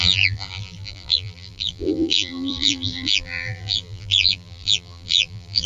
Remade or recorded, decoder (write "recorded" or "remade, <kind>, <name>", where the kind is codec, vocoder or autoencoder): remade, vocoder, BigVGAN v2